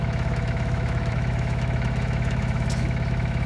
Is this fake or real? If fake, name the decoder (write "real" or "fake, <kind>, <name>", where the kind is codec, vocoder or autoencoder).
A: fake, autoencoder, DAC-VAE